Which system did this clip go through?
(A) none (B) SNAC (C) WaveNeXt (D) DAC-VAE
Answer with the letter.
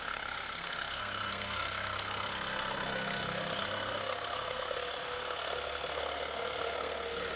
B